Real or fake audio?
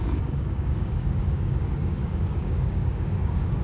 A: fake